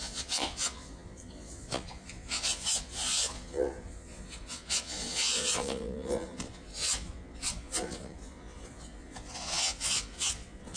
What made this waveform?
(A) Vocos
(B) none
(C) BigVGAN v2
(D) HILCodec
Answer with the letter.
A